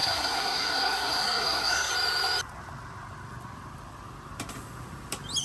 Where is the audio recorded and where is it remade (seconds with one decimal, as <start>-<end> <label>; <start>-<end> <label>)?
0.0-1.9 remade; 1.9-5.4 recorded